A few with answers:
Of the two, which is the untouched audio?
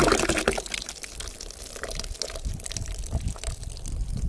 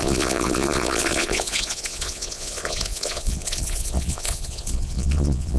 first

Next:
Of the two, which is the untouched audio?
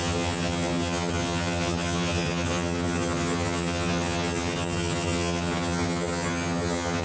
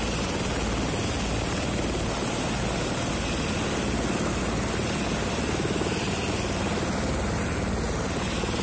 second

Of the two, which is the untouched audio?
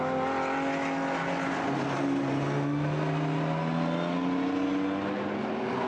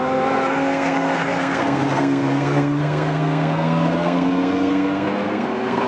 first